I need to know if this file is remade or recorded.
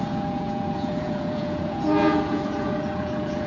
remade